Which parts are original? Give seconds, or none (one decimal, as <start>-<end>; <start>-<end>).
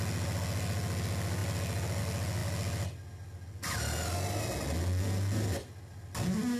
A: 0.0-6.6